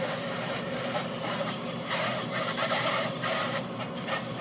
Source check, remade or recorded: remade